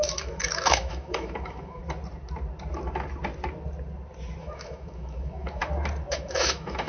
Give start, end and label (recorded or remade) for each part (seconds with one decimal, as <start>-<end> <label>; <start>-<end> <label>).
0.0-1.8 remade; 1.8-4.4 recorded; 4.4-5.6 remade; 5.6-6.1 recorded; 6.1-6.9 remade